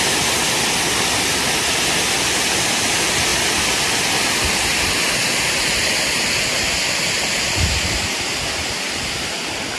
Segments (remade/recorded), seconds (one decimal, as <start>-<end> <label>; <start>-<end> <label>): 0.0-9.8 recorded